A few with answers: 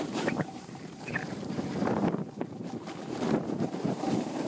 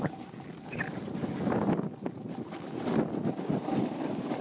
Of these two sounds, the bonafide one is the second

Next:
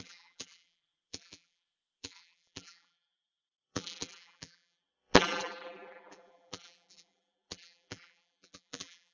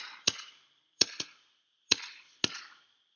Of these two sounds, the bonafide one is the second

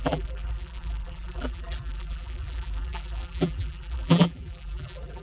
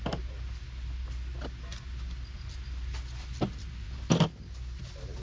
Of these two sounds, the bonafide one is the second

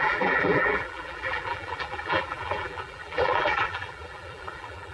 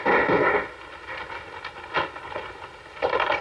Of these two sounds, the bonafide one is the second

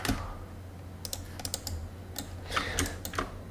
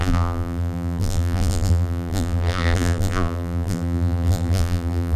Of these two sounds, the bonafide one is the first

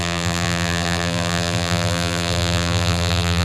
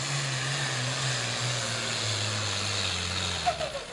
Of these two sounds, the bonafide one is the second